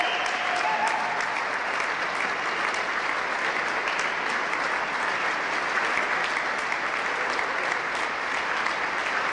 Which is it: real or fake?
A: real